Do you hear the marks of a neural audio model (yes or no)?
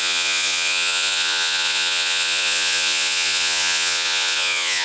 yes